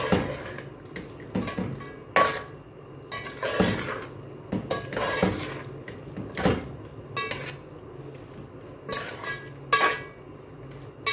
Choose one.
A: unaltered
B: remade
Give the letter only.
A